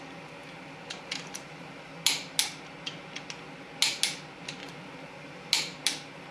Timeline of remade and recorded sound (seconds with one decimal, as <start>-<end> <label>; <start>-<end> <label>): 0.0-0.4 recorded; 0.4-1.9 remade; 1.9-4.6 recorded; 4.6-5.5 remade; 5.5-6.3 recorded